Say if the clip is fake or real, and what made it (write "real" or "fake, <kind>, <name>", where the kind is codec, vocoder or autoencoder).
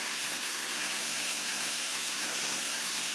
fake, codec, SNAC